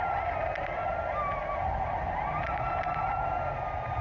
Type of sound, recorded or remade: recorded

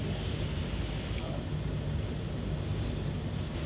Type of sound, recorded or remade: recorded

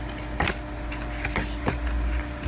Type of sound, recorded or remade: recorded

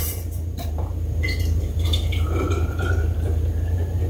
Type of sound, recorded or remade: remade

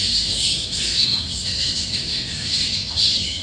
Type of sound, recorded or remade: remade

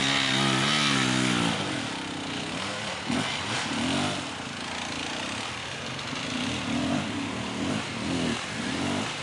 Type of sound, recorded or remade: recorded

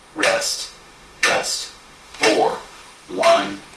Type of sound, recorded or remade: remade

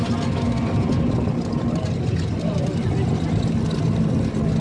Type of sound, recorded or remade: recorded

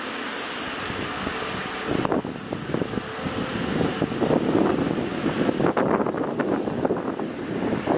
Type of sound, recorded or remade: recorded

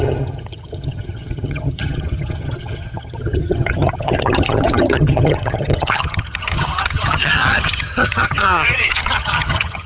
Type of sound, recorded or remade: remade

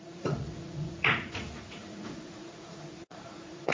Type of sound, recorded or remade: remade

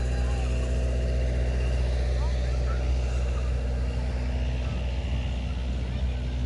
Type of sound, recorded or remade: recorded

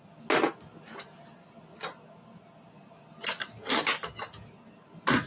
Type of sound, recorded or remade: recorded